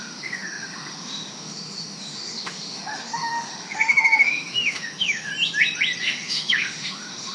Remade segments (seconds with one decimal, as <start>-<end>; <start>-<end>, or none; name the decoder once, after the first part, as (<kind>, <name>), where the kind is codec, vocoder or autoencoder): 0.0-5.3 (autoencoder, DAC-VAE); 6.0-7.3